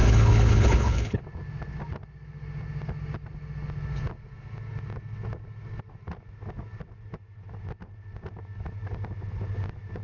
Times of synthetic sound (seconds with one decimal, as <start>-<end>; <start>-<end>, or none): 0.0-1.2